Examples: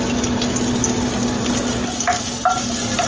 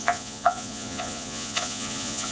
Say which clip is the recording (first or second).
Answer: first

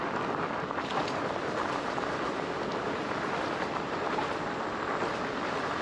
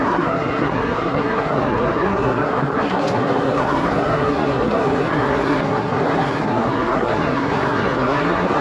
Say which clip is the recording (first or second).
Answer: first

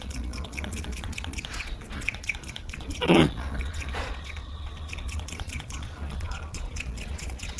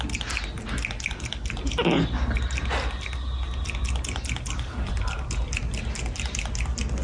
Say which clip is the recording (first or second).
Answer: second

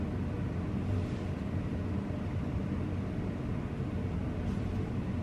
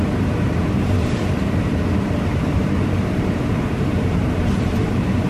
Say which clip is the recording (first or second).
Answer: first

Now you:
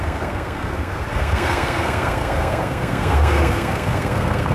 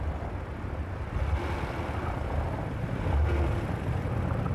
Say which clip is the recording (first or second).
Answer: second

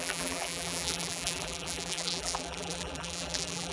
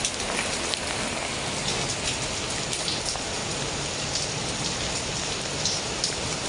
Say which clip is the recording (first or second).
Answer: second